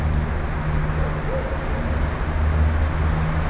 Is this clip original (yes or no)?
yes